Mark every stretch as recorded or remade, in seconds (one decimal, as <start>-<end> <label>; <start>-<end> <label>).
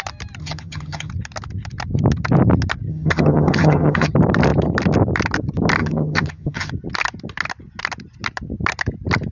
0.0-0.4 recorded; 0.4-1.1 remade; 1.1-2.9 recorded; 2.9-4.1 remade; 4.1-5.8 recorded; 5.8-6.7 remade; 6.7-9.3 recorded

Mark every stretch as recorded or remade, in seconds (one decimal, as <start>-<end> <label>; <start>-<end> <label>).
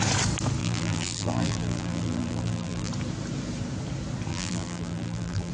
0.0-0.6 recorded; 0.6-2.9 remade; 2.9-4.3 recorded; 4.3-5.5 remade